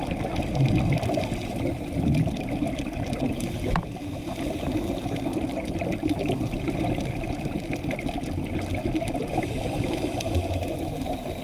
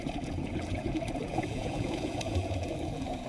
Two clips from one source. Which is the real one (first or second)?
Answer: first